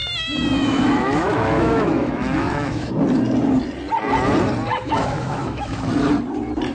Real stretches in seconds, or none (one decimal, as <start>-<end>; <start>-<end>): 2.9-4.7; 5.9-6.7